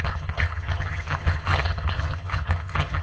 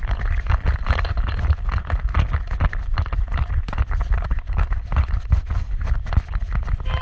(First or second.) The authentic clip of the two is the second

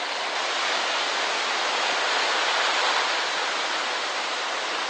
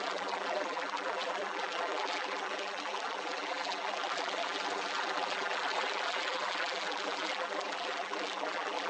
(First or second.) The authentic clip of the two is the first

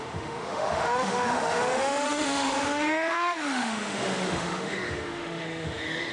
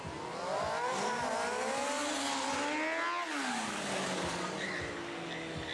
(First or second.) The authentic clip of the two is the second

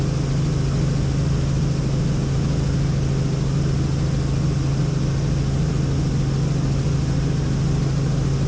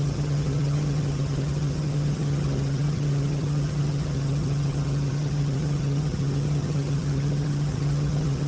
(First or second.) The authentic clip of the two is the first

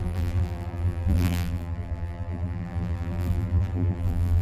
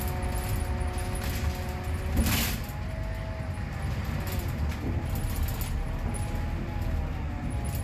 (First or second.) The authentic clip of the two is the second